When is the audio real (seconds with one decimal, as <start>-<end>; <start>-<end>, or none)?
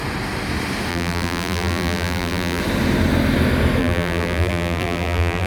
0.0-0.9; 2.6-3.8